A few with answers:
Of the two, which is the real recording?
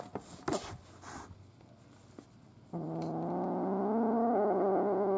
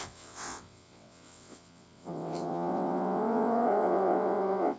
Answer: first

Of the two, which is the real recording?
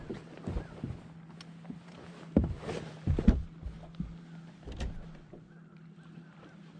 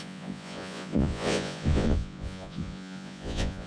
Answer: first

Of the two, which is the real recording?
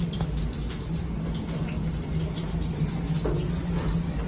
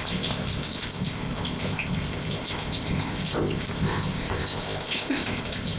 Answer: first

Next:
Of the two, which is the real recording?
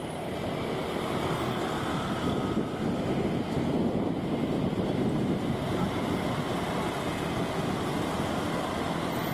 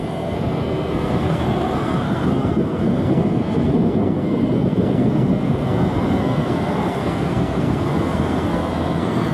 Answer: first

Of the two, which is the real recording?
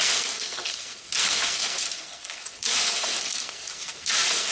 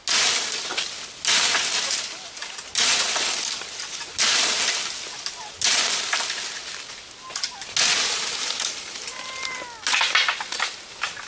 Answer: second